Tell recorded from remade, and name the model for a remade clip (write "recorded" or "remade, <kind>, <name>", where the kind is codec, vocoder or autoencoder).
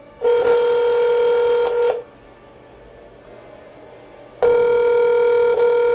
recorded